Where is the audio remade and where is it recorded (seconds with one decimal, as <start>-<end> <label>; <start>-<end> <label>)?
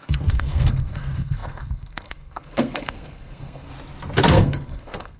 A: 0.0-3.7 remade; 3.7-4.3 recorded; 4.3-5.2 remade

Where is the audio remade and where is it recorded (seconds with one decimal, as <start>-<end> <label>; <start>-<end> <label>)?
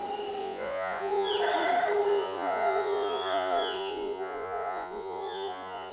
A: 0.0-0.4 recorded; 0.4-1.3 remade; 1.3-2.1 recorded; 2.1-5.9 remade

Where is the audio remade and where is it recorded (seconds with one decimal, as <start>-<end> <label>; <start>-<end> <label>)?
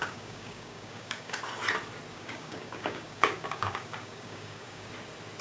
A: 0.0-1.4 remade; 1.4-2.1 recorded; 2.1-4.9 remade; 4.9-5.4 recorded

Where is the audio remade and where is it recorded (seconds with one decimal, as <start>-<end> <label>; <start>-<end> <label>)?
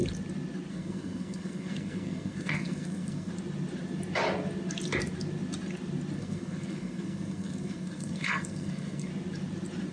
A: 0.0-0.7 recorded; 0.7-3.3 remade; 3.3-6.2 recorded; 6.2-9.1 remade; 9.1-9.9 recorded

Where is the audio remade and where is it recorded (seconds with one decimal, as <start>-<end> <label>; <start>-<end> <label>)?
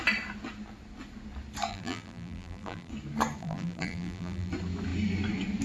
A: 0.0-1.7 recorded; 1.7-2.9 remade; 2.9-3.4 recorded; 3.4-4.5 remade; 4.5-5.6 recorded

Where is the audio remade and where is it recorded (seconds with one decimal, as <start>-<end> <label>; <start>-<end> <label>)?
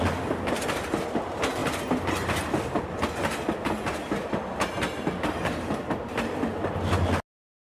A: 0.0-7.6 recorded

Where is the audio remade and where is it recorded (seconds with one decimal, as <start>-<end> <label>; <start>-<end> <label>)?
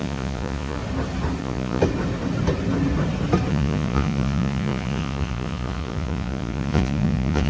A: 0.0-0.8 remade; 0.8-1.4 recorded; 1.4-1.8 remade; 1.8-3.5 recorded; 3.5-7.5 remade